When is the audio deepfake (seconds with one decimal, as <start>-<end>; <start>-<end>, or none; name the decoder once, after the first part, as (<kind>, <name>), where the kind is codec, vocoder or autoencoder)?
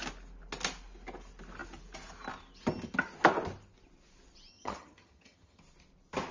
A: 4.5-5.6 (vocoder, HiFi-GAN)